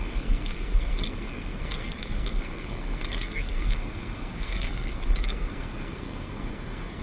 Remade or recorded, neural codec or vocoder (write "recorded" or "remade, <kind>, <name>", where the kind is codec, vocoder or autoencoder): remade, codec, SNAC